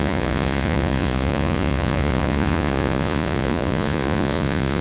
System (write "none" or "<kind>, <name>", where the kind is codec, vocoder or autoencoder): vocoder, Vocos